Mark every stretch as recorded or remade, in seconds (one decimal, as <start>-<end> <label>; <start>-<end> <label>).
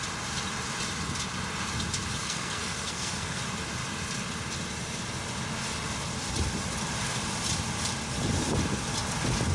0.0-2.2 recorded; 2.2-3.4 remade; 3.4-9.5 recorded